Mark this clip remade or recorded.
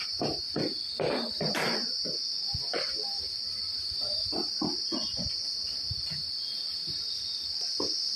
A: recorded